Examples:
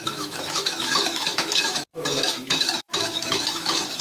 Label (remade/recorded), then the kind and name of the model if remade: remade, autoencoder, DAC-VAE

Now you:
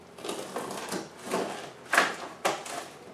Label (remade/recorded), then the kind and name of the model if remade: recorded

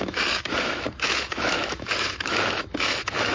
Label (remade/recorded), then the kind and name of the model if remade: remade, autoencoder, DAC-VAE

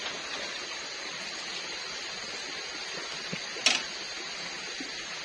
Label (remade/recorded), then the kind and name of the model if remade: recorded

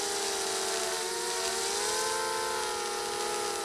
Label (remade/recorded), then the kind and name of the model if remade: recorded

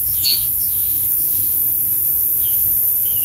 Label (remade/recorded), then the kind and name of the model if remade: remade, autoencoder, DAC-VAE